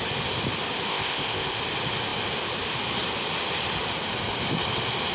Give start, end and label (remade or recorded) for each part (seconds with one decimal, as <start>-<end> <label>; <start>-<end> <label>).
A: 0.0-0.9 recorded; 0.9-1.6 remade; 1.6-5.1 recorded

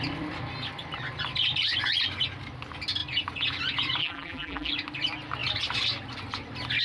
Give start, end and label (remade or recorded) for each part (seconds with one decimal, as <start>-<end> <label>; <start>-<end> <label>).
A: 0.0-4.0 recorded; 4.0-4.7 remade; 4.7-6.8 recorded

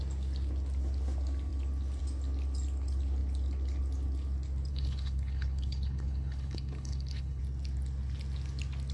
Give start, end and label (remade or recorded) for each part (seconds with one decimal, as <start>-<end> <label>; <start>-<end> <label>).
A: 0.0-4.7 recorded; 4.7-7.4 remade; 7.4-8.9 recorded

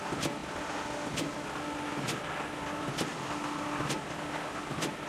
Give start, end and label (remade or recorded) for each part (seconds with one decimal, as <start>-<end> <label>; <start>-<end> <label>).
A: 0.0-5.1 recorded

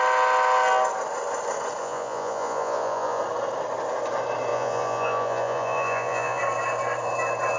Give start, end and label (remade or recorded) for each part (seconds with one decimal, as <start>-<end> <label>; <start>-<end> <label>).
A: 0.0-1.8 recorded; 1.8-3.2 remade; 3.2-4.5 recorded; 4.5-6.4 remade; 6.4-7.6 recorded